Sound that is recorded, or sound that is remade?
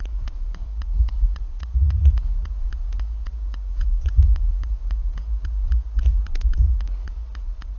remade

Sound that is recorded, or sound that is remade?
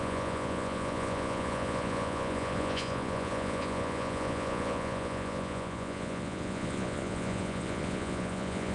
remade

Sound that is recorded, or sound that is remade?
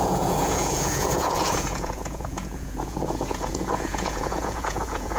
remade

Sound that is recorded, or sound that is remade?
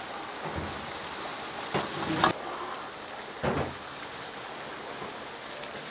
recorded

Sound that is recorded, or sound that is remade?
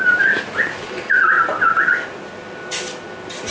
recorded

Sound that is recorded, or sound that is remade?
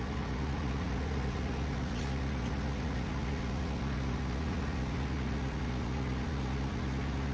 remade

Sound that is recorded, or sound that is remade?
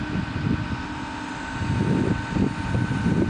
recorded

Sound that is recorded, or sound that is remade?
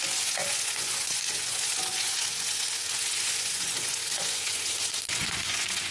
remade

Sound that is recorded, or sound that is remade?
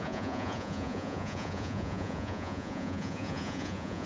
remade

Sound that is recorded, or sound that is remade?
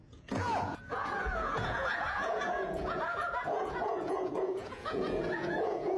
remade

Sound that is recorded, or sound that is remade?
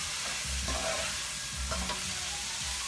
recorded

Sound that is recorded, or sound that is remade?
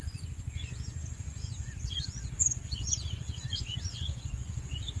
remade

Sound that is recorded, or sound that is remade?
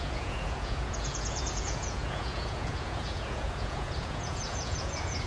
remade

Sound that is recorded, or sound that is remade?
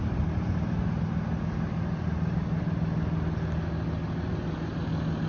recorded